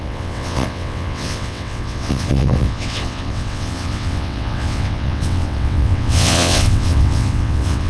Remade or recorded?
remade